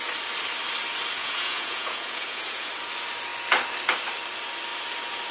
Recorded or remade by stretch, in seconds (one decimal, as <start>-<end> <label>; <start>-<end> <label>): 0.0-1.2 recorded; 1.2-2.7 remade; 2.7-5.3 recorded